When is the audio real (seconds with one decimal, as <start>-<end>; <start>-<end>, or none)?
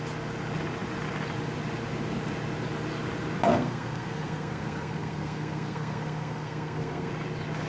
0.0-3.5; 7.1-7.7